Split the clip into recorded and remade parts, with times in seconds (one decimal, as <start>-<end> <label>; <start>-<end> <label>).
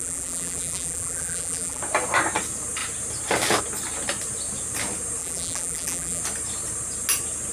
0.0-1.8 remade; 1.8-5.2 recorded; 5.2-6.2 remade; 6.2-7.5 recorded